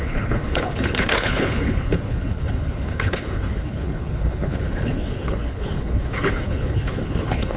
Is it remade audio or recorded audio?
remade